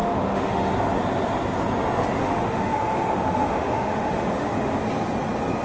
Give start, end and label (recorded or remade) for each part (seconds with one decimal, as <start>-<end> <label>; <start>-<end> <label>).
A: 0.0-0.7 remade; 0.7-2.2 recorded; 2.2-4.8 remade; 4.8-5.6 recorded